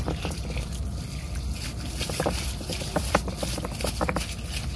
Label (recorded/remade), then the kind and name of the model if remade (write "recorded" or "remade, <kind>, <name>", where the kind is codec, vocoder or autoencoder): recorded